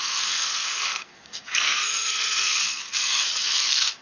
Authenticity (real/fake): fake